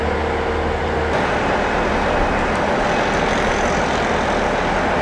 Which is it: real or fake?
real